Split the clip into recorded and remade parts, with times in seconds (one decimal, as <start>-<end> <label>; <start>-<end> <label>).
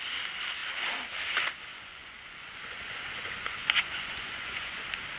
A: 0.0-1.7 recorded; 1.7-4.8 remade; 4.8-5.2 recorded